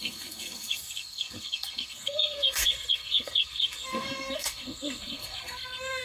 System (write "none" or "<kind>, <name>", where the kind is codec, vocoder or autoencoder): codec, SNAC